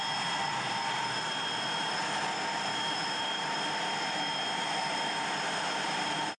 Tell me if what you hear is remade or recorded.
remade